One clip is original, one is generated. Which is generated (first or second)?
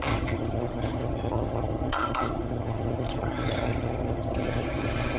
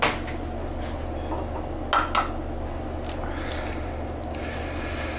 first